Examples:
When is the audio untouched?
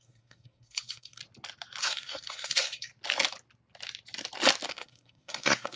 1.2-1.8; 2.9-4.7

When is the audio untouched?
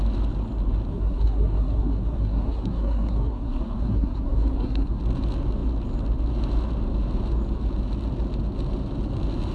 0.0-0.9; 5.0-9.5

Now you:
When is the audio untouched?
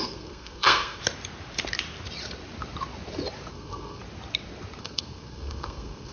1.0-3.5; 4.0-4.8